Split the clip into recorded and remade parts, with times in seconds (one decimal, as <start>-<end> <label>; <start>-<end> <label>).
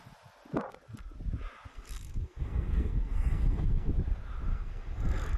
0.0-1.7 recorded; 1.7-3.9 remade; 3.9-4.5 recorded; 4.5-5.4 remade